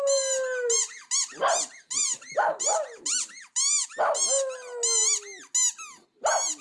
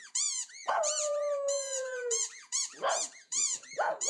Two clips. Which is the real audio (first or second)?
first